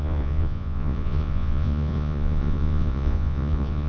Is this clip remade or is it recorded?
remade